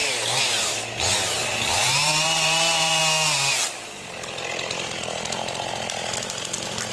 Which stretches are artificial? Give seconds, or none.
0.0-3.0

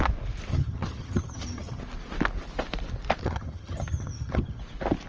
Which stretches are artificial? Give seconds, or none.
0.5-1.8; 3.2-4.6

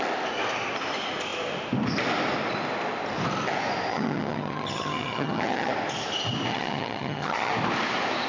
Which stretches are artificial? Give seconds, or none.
3.9-5.7; 6.5-7.5

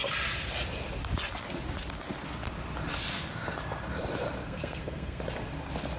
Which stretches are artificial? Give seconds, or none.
4.4-5.2

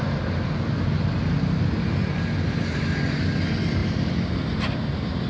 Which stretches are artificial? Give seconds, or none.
none

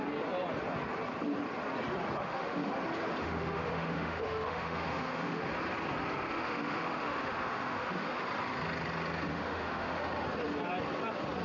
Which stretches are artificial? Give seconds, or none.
2.2-2.7; 3.2-5.4; 6.3-8.2; 9.3-10.0

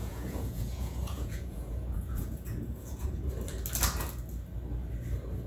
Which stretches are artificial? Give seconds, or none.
0.0-3.3

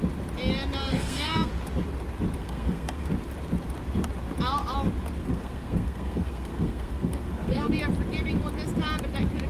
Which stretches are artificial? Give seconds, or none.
0.8-1.5; 2.4-3.1; 5.2-7.7